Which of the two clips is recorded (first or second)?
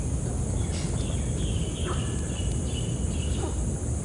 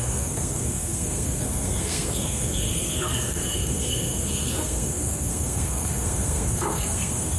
first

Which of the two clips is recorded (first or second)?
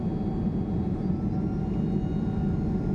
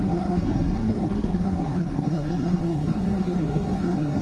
first